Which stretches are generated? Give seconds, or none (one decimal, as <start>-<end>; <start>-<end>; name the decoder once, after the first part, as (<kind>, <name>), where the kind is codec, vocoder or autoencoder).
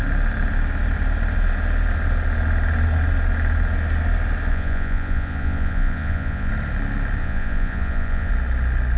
4.5-6.5 (vocoder, Vocos); 7.2-8.3